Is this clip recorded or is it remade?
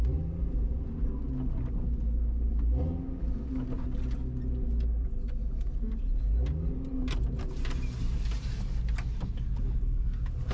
recorded